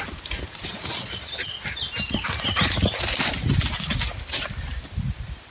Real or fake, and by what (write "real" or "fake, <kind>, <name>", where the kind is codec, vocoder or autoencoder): real